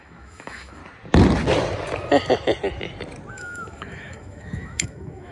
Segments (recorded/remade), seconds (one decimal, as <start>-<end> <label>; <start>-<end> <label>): 0.0-0.8 remade; 0.8-3.3 recorded; 3.3-5.3 remade

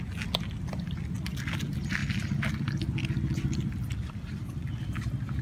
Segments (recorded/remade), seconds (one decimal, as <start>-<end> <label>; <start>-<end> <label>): 0.0-5.4 recorded

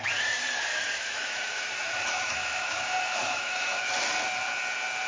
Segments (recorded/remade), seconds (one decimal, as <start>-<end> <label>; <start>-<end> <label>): 0.0-0.7 recorded; 0.7-3.8 remade; 3.8-5.1 recorded

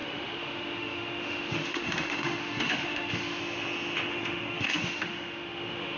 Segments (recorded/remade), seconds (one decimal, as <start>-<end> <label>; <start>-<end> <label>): 0.0-3.4 remade; 3.4-4.1 recorded; 4.1-6.0 remade

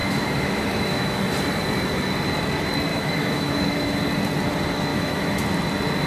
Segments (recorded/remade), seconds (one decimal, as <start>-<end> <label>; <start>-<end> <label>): 0.0-1.2 remade; 1.2-2.9 recorded; 2.9-4.0 remade; 4.0-4.9 recorded; 4.9-5.4 remade; 5.4-6.1 recorded

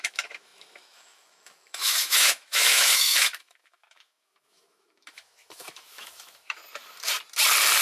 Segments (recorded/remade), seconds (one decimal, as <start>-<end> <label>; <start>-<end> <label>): 0.0-6.6 remade; 6.6-7.8 recorded

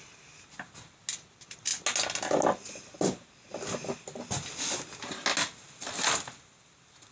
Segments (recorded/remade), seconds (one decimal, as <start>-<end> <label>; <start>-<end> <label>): 0.0-7.1 recorded